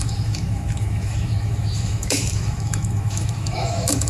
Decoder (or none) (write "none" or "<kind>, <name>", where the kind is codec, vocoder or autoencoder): autoencoder, DAC-VAE